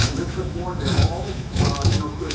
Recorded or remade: remade